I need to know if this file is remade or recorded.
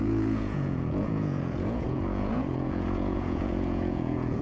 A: remade